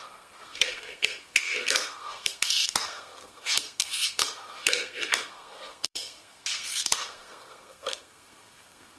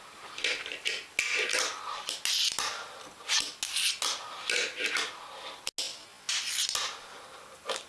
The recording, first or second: second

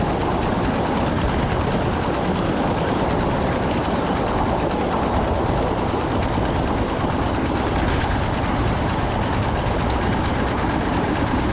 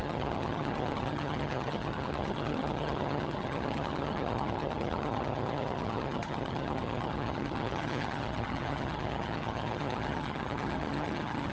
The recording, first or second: first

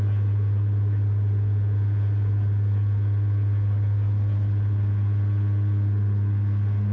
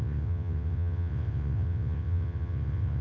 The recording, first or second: first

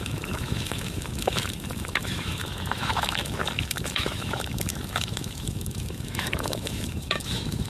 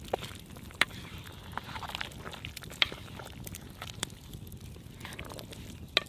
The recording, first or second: second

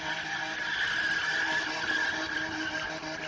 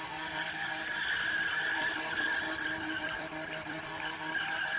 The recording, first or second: first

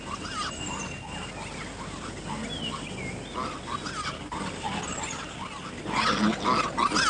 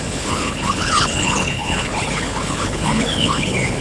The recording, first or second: first